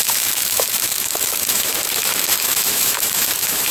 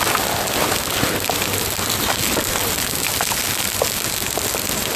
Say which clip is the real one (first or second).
second